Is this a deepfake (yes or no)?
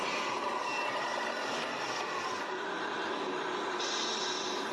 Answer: no